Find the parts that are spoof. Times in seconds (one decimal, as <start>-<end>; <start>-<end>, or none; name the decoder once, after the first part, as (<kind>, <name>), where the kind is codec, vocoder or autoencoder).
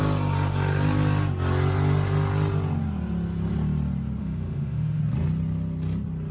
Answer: 4.2-5.0 (autoencoder, DAC-VAE)